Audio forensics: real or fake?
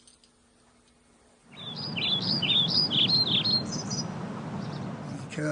real